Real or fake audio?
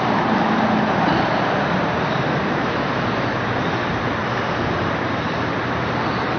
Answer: real